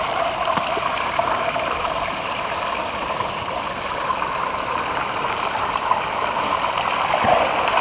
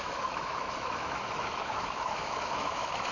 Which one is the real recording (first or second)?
first